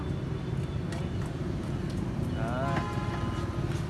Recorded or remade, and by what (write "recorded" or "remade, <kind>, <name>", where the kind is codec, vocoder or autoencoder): recorded